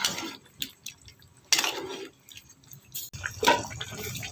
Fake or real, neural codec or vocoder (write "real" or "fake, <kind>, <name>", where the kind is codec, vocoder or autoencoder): real